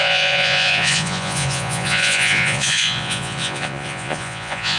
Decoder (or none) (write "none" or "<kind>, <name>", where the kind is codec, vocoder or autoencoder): vocoder, Vocos